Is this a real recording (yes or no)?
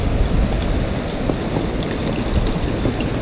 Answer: yes